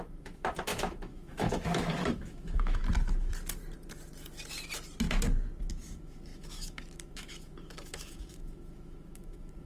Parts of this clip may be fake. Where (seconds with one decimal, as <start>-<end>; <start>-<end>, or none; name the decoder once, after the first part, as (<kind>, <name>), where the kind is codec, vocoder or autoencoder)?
0.0-2.8 (autoencoder, DAC-VAE); 5.7-9.7